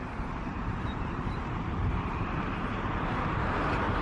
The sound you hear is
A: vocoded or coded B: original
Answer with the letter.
A